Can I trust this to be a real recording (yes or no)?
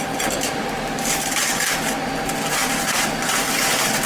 no